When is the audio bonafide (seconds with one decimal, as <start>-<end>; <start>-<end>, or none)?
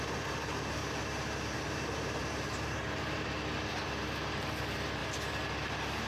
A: 0.0-0.8; 3.3-6.1